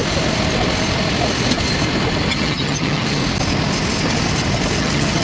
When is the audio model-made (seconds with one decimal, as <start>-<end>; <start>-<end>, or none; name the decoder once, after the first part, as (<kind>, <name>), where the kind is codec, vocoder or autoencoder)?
2.3-3.2 (vocoder, HiFi-GAN); 4.8-5.2